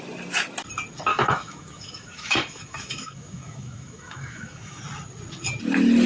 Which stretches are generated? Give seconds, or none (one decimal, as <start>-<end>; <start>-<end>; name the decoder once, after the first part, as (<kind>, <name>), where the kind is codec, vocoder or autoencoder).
1.1-4.8 (autoencoder, DAC-VAE)